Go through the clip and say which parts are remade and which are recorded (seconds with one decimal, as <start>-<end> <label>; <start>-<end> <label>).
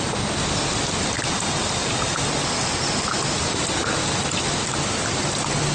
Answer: 0.0-1.8 recorded; 1.8-2.3 remade; 2.3-5.7 recorded